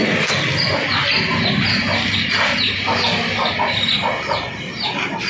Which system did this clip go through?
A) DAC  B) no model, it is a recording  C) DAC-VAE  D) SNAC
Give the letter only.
B